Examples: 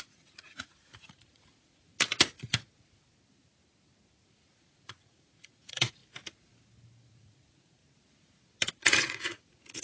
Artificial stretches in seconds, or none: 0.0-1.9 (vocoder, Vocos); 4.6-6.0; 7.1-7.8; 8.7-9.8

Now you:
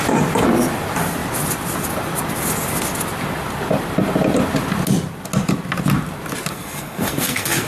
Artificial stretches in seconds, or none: 6.5-7.7 (codec, SNAC)

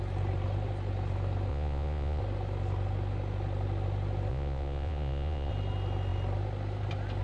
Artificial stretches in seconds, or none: 1.5-2.2 (vocoder, Vocos); 4.3-5.5